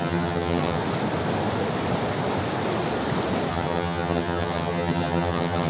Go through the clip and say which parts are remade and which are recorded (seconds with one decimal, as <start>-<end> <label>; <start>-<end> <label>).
0.0-0.8 remade; 0.8-3.5 recorded; 3.5-5.7 remade